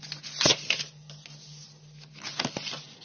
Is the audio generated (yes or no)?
no